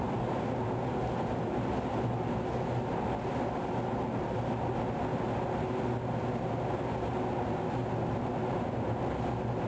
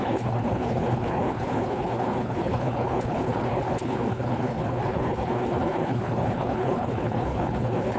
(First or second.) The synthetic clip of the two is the second